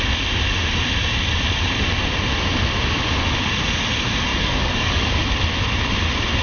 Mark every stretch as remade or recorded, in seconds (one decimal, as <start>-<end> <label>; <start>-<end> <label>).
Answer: 0.0-4.3 recorded; 4.3-5.2 remade; 5.2-6.4 recorded